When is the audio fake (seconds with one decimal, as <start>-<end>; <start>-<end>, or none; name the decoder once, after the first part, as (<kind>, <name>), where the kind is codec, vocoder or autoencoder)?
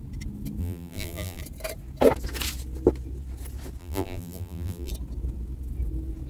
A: 0.6-1.4 (vocoder, BigVGAN v2); 3.8-4.9